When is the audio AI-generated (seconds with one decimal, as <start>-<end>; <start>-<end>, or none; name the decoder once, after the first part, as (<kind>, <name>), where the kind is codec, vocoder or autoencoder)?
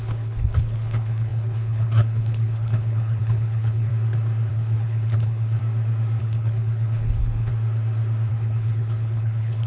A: 0.0-3.9 (codec, HILCodec); 4.5-5.6; 6.2-7.5; 8.3-9.7